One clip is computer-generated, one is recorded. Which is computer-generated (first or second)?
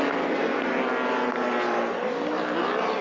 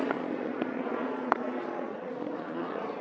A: second